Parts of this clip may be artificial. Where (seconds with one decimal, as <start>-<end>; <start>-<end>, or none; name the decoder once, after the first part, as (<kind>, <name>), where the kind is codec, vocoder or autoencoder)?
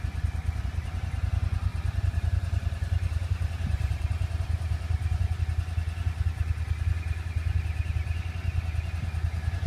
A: 1.7-5.4 (vocoder, BigVGAN v2)